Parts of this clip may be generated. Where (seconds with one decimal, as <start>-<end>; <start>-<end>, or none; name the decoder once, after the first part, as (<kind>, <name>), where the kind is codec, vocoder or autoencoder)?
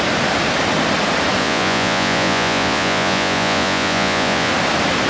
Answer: 1.4-4.5 (vocoder, Vocos)